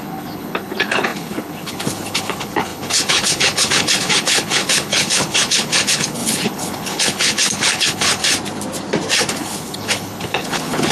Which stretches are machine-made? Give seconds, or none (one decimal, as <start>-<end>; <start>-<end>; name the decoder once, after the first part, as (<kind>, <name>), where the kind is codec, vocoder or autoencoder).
0.0-8.2 (codec, HILCodec); 9.3-10.9